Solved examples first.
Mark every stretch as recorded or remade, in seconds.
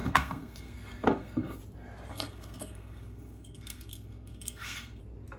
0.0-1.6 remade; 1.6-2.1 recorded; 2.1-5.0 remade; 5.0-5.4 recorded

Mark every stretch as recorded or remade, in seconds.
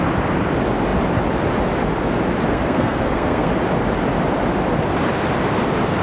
0.0-2.5 recorded; 2.5-3.5 remade; 3.5-6.0 recorded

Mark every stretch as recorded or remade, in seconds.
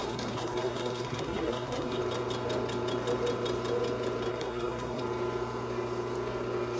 0.0-2.0 remade; 2.0-4.3 recorded; 4.3-5.0 remade; 5.0-6.8 recorded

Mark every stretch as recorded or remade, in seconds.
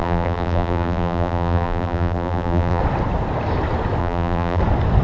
0.0-2.8 remade; 2.8-4.0 recorded; 4.0-4.6 remade; 4.6-5.0 recorded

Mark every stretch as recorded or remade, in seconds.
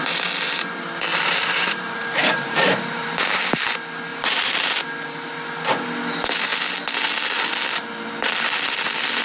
0.0-1.1 recorded; 1.1-3.4 remade; 3.4-4.1 recorded; 4.1-4.7 remade; 4.7-9.2 recorded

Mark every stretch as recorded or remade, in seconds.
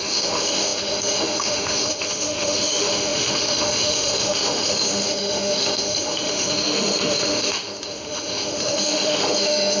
0.0-9.8 remade